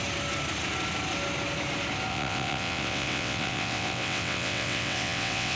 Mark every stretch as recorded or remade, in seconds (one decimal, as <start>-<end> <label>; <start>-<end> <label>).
0.0-2.1 recorded; 2.1-5.6 remade